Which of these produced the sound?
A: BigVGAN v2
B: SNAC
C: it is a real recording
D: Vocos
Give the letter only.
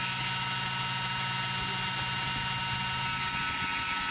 C